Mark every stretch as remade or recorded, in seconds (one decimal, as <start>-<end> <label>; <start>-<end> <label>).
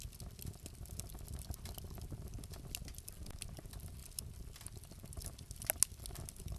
0.0-6.6 recorded